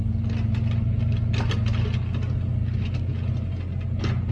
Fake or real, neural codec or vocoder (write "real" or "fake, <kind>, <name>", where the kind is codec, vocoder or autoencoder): real